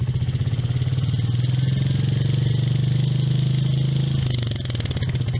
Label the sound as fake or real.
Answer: real